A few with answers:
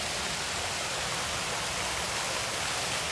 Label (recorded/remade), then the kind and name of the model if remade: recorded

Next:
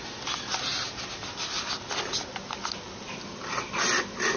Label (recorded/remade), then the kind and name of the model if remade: recorded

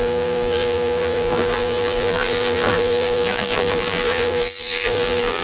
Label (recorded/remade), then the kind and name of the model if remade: remade, vocoder, BigVGAN v2